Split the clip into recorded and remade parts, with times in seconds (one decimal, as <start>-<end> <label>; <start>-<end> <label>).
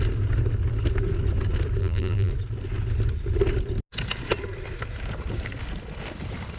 0.0-1.8 recorded; 1.8-2.3 remade; 2.3-6.6 recorded